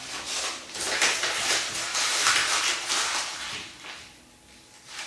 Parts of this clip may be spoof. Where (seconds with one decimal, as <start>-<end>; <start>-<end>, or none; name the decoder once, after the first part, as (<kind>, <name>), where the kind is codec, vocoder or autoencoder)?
none